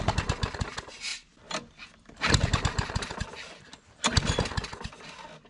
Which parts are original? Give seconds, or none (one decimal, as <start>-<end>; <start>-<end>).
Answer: 0.0-5.5